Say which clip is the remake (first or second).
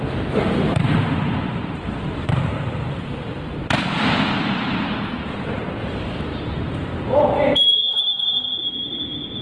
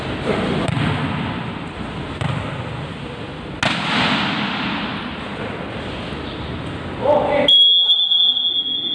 first